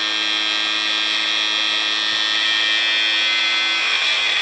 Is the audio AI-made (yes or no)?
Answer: no